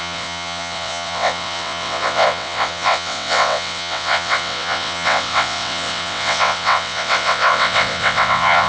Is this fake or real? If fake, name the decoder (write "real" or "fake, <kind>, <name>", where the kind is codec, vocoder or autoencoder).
fake, vocoder, WaveNeXt